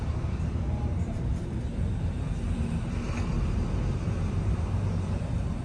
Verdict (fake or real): fake